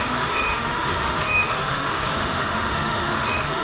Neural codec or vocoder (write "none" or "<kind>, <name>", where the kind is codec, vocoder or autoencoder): autoencoder, DAC-VAE